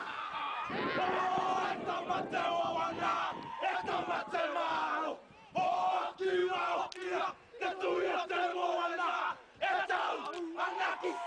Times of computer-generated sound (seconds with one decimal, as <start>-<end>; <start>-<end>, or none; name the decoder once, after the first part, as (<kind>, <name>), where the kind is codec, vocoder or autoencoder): 8.5-9.2 (autoencoder, DAC-VAE)